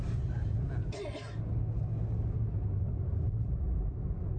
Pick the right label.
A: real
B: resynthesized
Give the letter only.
A